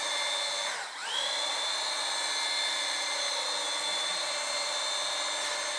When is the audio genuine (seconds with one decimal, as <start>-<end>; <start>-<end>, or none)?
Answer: 0.0-1.0; 1.7-2.7; 3.3-3.9; 4.8-5.8